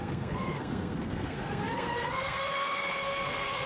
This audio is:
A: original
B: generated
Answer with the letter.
B